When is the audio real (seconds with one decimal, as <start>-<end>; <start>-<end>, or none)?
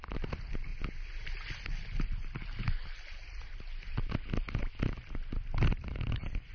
0.0-6.5